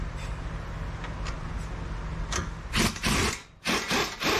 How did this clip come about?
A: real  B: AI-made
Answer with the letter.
A